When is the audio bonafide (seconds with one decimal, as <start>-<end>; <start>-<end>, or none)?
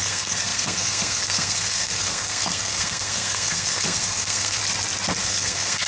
4.6-5.2